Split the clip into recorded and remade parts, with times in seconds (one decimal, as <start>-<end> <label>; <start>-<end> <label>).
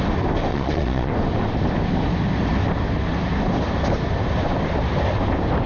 0.0-0.5 recorded; 0.5-1.1 remade; 1.1-5.7 recorded